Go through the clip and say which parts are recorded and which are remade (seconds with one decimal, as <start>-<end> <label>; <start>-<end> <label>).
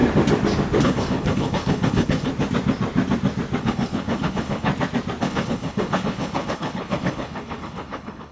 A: 0.0-0.8 recorded; 0.8-2.3 remade; 2.3-3.6 recorded; 3.6-4.7 remade; 4.7-5.2 recorded; 5.2-8.3 remade